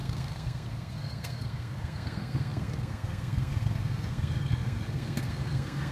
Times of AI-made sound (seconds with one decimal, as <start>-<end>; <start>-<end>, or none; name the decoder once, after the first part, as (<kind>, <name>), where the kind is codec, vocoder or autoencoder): 0.0-5.9 (codec, SNAC)